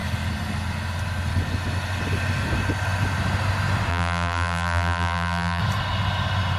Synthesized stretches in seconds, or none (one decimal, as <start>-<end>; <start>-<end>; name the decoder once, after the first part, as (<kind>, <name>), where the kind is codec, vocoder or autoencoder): 3.9-5.6 (vocoder, BigVGAN v2)